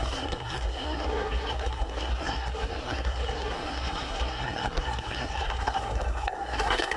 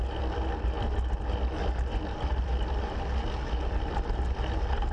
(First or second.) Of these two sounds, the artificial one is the first